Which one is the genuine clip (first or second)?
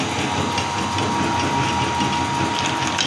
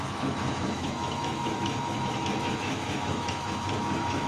first